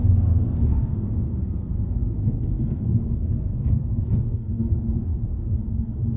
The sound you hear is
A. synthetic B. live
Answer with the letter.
A